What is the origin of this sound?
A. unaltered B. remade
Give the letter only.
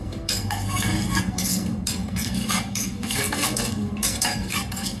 B